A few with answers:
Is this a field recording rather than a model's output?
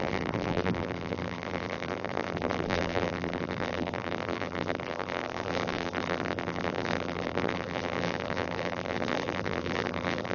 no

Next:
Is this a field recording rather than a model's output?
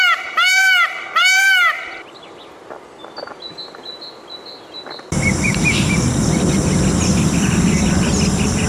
no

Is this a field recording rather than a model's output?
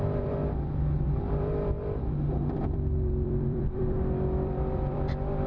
no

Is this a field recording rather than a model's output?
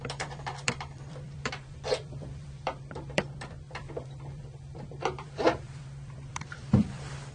no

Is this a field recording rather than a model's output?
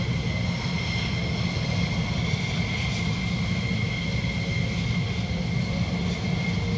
yes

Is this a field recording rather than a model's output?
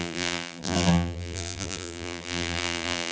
no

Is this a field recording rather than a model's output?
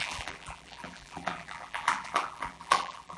no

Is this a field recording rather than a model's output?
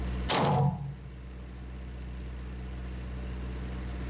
yes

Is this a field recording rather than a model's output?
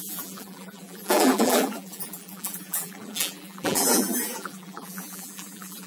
no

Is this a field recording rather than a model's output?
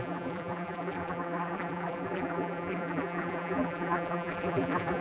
no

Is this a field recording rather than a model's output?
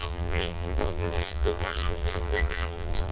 no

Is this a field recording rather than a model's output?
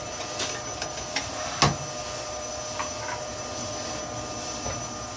yes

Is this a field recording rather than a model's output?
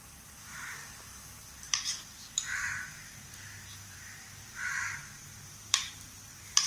no